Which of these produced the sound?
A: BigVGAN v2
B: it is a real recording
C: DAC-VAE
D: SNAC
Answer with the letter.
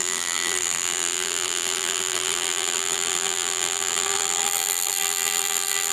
A